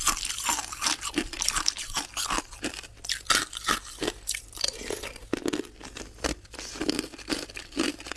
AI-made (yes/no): no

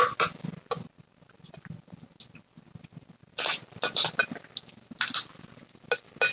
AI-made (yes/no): no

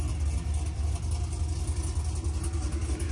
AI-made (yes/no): no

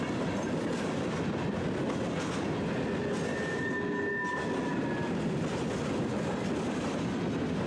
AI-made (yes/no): no